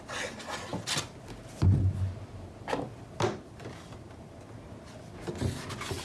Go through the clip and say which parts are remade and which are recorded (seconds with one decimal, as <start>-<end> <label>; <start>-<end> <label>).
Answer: 0.0-0.7 recorded; 0.7-4.3 remade; 4.3-6.0 recorded